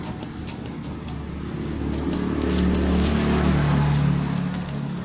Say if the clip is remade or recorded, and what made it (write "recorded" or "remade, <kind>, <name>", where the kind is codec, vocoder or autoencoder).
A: recorded